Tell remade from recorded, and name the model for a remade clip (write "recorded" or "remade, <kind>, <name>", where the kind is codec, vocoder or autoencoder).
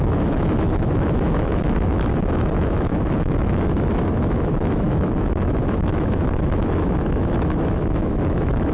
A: remade, autoencoder, DAC-VAE